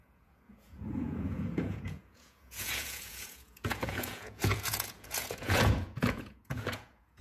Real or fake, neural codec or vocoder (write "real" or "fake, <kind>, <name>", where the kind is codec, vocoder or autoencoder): fake, vocoder, Vocos